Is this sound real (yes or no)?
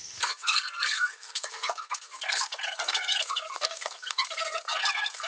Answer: no